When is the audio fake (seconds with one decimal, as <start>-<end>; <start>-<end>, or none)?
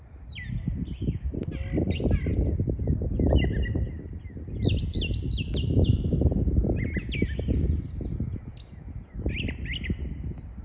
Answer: none